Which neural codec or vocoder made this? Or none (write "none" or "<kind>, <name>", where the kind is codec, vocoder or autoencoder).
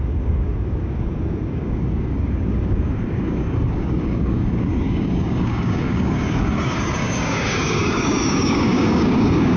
codec, DAC